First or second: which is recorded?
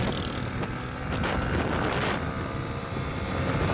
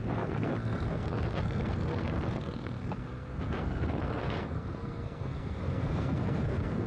first